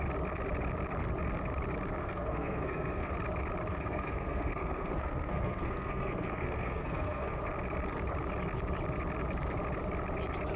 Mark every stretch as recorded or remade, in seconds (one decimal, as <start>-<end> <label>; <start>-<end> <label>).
0.0-2.0 recorded; 2.0-3.1 remade; 3.1-3.7 recorded; 3.7-7.4 remade; 7.4-10.6 recorded